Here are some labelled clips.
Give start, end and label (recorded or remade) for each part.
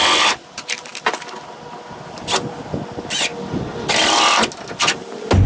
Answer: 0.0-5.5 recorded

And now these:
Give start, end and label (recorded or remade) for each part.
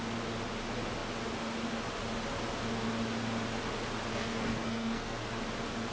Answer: 0.0-4.1 recorded; 4.1-5.3 remade; 5.3-5.9 recorded